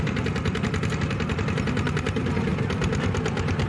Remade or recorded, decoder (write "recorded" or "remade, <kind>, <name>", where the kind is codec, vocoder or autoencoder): recorded